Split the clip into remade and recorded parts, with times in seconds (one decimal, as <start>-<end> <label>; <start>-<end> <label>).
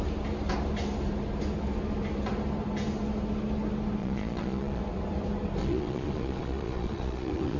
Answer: 0.0-4.0 recorded; 4.0-4.8 remade; 4.8-5.6 recorded; 5.6-7.6 remade